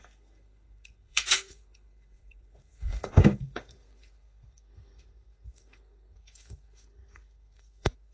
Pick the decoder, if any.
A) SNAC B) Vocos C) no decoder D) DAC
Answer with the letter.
A